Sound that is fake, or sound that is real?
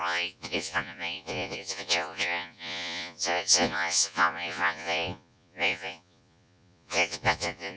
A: fake